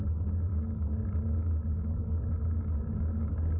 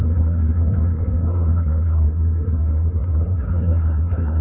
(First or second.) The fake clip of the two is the second